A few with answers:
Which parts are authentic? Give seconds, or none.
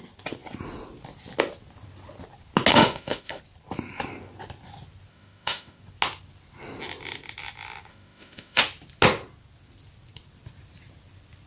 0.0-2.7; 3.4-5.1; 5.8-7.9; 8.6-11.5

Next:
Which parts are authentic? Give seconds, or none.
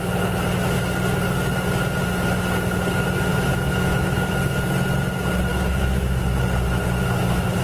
0.0-3.3; 4.3-5.5; 6.2-7.6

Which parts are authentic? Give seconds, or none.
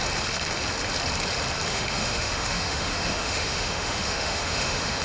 0.0-1.7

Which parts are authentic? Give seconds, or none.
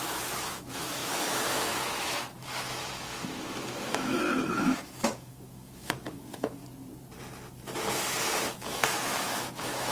6.6-8.6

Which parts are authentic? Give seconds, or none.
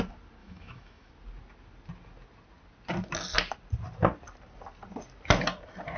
0.0-0.4; 1.1-6.0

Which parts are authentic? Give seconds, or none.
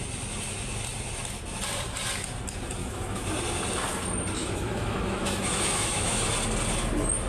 0.0-2.8; 3.3-4.4; 6.3-7.3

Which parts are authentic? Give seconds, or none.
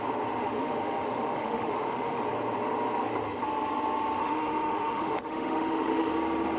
0.0-0.4; 2.2-4.2; 6.1-6.6